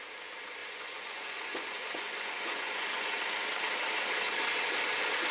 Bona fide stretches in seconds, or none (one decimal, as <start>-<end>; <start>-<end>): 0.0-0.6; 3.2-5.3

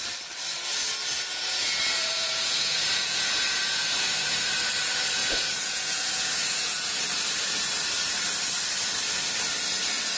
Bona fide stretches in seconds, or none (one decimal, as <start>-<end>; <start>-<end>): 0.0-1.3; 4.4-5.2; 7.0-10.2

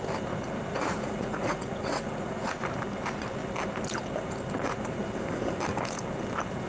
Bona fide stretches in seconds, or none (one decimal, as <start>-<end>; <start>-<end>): 0.0-0.7; 2.6-6.7

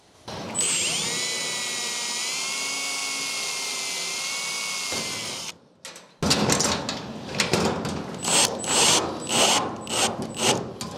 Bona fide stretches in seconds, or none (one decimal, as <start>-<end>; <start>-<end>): 0.0-11.0

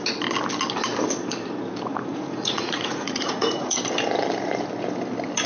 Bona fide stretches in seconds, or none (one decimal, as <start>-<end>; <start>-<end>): 0.0-1.9; 3.8-5.5